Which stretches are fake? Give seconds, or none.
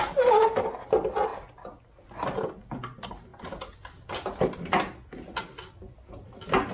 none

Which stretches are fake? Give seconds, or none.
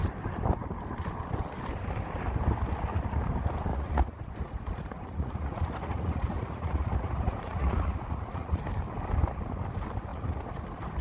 3.7-8.7 (vocoder, Vocos); 10.1-10.6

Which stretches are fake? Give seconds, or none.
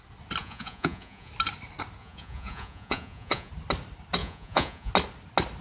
0.4-1.3 (vocoder, Vocos); 2.0-3.5; 4.2-4.9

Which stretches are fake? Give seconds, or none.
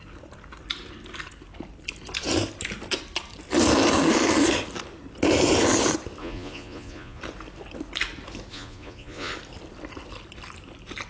6.2-7.2 (vocoder, Vocos); 8.5-9.3